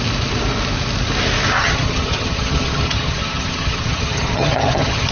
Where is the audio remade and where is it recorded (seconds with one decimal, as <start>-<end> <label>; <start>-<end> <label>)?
0.0-1.6 recorded; 1.6-5.1 remade